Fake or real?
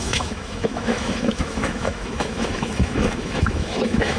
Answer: fake